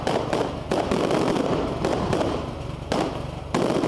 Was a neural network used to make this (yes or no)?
no